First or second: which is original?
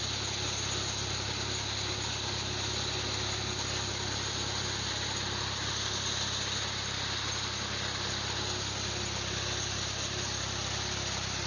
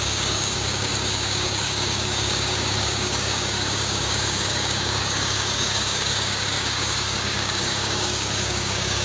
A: first